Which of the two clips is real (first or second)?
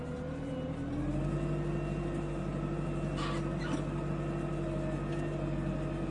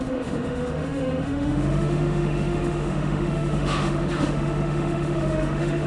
first